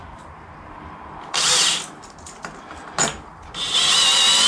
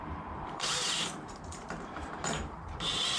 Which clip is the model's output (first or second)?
second